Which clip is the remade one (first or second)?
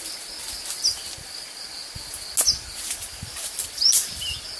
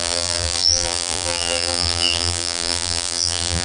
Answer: second